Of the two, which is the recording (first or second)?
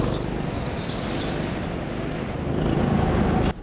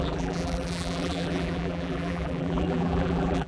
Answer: first